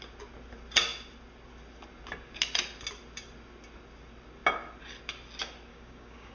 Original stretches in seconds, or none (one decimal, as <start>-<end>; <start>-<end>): 0.0-5.7